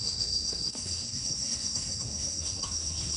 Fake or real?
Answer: fake